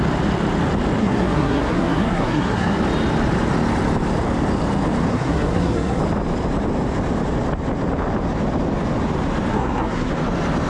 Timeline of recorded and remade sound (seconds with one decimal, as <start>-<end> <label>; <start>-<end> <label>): 0.0-1.0 recorded; 1.0-2.8 remade; 2.8-5.1 recorded; 5.1-6.0 remade; 6.0-9.5 recorded; 9.5-10.1 remade; 10.1-10.7 recorded